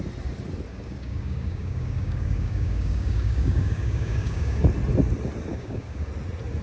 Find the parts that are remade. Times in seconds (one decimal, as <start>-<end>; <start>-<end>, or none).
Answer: 0.7-4.6; 5.5-6.1